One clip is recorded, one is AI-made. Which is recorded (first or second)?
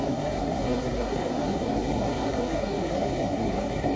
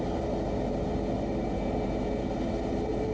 second